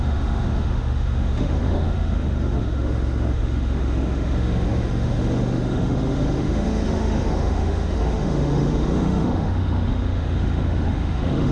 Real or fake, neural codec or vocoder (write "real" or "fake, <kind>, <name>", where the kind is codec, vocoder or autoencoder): fake, autoencoder, DAC-VAE